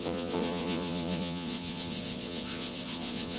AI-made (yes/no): yes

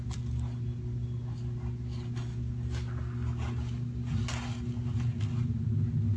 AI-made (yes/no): no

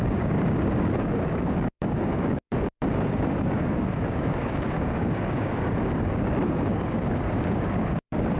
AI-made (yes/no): yes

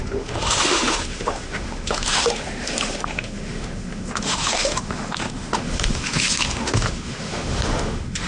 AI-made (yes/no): yes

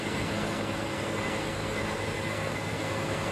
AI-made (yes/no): yes